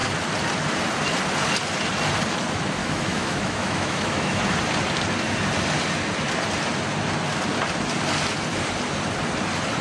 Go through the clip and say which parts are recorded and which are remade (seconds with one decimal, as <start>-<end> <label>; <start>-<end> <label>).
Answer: 0.0-2.8 recorded; 2.8-4.4 remade; 4.4-9.8 recorded